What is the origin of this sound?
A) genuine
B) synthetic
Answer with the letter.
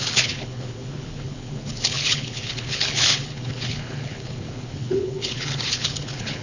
B